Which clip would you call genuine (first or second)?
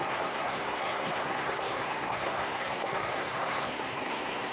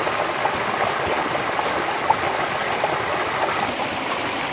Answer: second